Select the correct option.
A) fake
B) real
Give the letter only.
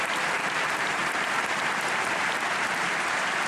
A